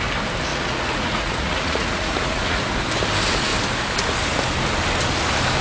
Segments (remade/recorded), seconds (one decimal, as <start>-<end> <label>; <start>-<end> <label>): 0.0-0.5 recorded; 0.5-2.6 remade; 2.6-5.6 recorded